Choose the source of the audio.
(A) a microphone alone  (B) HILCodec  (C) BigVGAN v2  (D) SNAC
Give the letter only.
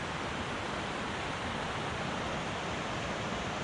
A